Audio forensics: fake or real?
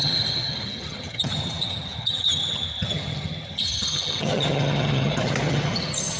fake